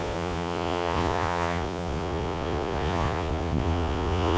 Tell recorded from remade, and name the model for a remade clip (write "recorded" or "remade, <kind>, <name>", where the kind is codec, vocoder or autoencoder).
remade, vocoder, Vocos